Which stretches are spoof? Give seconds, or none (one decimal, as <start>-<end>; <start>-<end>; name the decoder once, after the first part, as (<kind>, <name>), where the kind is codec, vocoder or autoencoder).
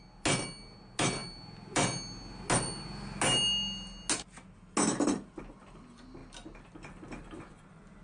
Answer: none